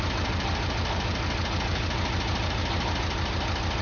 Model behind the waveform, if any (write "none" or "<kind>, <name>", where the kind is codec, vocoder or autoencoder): none